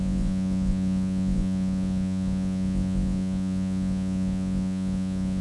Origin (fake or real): fake